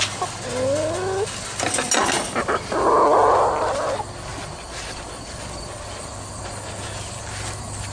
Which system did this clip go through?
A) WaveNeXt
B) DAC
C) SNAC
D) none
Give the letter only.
D